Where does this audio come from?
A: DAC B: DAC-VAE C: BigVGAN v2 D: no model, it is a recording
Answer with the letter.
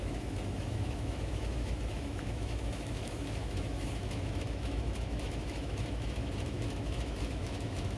B